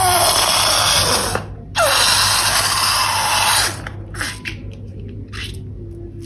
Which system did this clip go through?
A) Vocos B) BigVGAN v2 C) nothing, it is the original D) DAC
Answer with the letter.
C